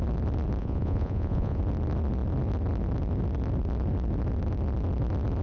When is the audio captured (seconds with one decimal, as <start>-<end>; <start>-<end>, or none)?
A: 0.0-0.6; 1.6-5.4